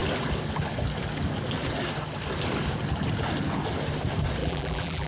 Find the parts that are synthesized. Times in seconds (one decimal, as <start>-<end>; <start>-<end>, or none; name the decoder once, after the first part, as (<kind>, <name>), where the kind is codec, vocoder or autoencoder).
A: 4.4-5.1 (vocoder, BigVGAN v2)

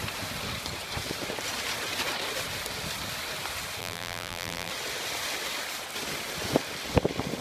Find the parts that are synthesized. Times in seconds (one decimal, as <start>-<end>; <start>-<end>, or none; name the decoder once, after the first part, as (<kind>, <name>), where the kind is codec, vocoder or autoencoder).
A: 3.8-4.7 (vocoder, BigVGAN v2)

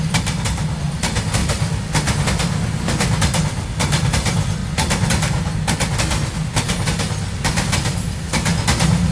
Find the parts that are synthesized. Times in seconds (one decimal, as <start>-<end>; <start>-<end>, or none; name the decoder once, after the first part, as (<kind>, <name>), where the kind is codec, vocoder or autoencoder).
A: 0.0-1.4 (vocoder, BigVGAN v2); 3.8-4.6; 7.7-8.5

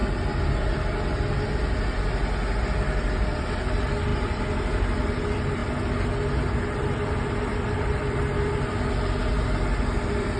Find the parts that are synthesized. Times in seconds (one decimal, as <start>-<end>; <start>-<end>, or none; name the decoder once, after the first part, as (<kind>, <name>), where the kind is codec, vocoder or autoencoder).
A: 2.6-4.1 (vocoder, BigVGAN v2); 5.0-5.6; 6.6-10.4